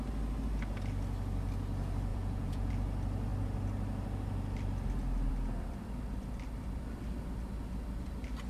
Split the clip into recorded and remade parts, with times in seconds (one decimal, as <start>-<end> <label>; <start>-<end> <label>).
0.0-2.1 recorded; 2.1-2.7 remade; 2.7-8.5 recorded